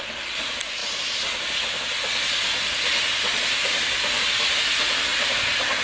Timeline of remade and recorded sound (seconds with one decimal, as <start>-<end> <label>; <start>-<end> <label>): 0.0-5.8 recorded